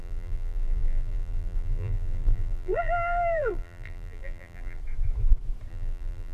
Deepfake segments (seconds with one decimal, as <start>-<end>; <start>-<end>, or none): 0.0-4.8; 5.7-6.3